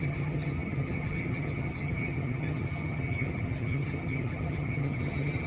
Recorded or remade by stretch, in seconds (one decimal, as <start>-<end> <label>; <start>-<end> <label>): 0.0-5.5 remade